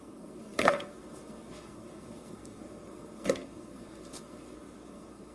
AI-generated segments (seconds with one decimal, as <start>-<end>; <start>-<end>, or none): 0.0-5.3